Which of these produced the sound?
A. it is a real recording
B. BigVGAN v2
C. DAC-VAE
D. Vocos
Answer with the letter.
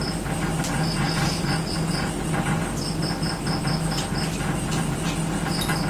A